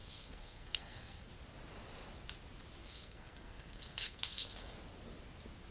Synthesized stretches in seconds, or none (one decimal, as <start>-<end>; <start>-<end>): 0.0-1.3; 2.8-4.8